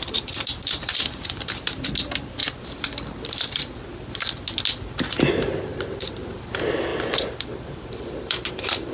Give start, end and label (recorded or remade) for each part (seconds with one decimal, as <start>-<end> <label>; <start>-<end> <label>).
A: 0.0-2.4 remade; 2.4-5.3 recorded; 5.3-8.9 remade